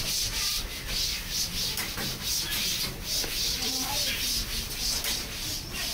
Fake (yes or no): no